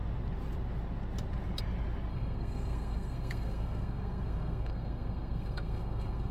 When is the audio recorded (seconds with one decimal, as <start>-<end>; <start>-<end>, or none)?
0.0-2.1